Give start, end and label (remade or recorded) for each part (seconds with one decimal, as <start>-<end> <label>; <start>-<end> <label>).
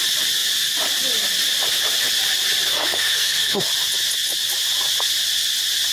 0.0-2.7 recorded; 2.7-3.7 remade; 3.7-5.9 recorded